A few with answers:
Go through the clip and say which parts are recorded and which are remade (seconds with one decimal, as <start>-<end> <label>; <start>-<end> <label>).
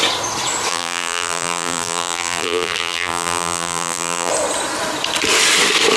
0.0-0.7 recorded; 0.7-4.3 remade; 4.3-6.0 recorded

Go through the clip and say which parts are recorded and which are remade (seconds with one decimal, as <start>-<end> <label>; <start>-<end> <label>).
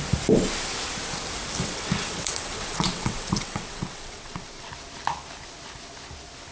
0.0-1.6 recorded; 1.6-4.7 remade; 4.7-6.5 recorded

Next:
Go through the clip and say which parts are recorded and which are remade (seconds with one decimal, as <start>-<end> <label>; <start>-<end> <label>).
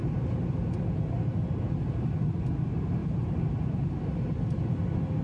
0.0-5.2 recorded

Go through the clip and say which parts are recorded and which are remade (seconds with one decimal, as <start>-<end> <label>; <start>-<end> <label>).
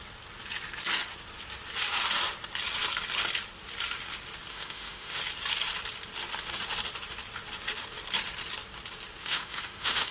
0.0-4.5 recorded; 4.5-5.2 remade; 5.2-9.2 recorded; 9.2-10.1 remade